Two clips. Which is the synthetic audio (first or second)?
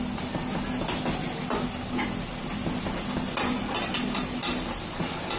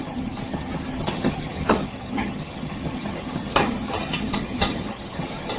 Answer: second